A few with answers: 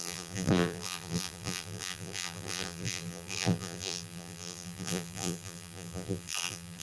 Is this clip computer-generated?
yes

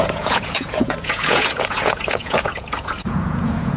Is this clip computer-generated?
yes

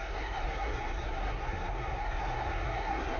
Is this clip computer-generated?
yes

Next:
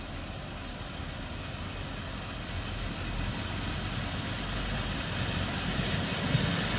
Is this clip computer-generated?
no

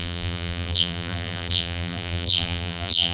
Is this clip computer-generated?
yes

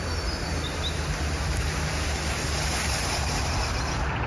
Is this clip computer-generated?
no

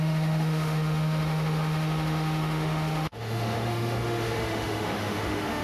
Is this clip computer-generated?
yes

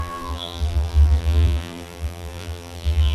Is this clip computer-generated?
yes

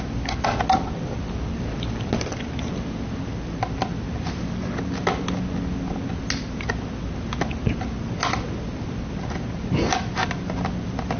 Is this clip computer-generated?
no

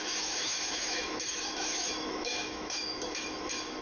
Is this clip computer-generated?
yes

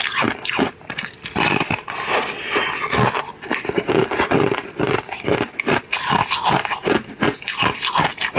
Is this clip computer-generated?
no